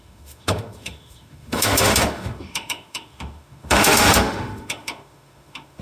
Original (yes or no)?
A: no